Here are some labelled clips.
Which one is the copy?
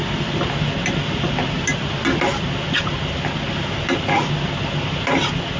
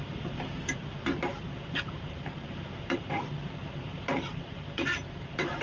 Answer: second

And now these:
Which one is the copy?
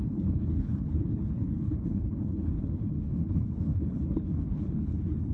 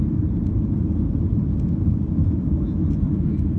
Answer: first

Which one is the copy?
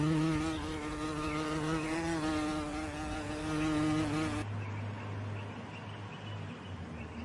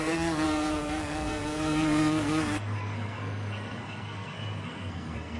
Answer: second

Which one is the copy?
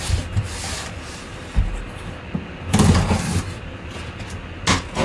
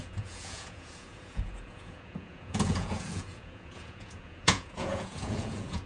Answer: second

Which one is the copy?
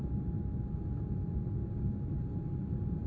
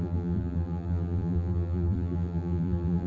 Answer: second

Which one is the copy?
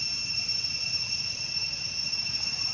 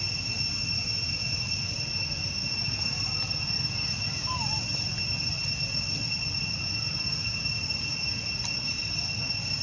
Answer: first